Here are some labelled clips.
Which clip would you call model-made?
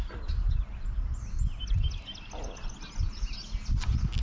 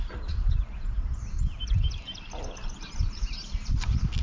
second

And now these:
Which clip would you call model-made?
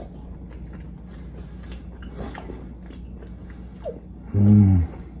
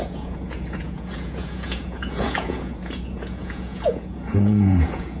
second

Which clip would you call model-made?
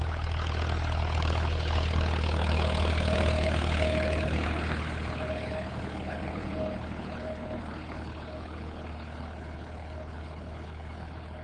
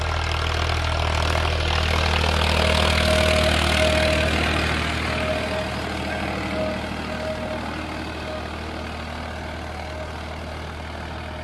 first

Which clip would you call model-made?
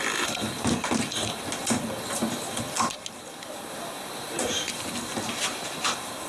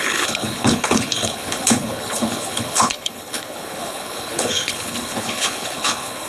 second